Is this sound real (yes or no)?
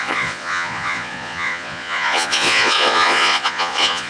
no